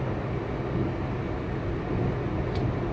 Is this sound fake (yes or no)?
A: no